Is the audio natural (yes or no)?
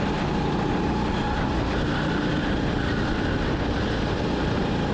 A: yes